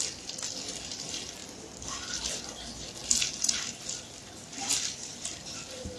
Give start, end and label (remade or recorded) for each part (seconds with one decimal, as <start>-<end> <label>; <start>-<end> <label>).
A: 0.0-1.4 recorded; 1.4-2.3 remade; 2.3-5.1 recorded; 5.1-5.6 remade; 5.6-6.0 recorded